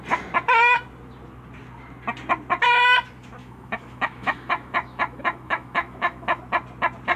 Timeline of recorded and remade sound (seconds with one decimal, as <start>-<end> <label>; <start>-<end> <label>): 0.0-3.4 recorded; 3.4-6.4 remade; 6.4-7.2 recorded